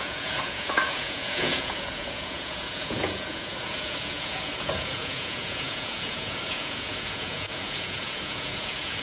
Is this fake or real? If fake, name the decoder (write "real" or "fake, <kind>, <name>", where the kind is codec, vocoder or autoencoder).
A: fake, vocoder, Vocos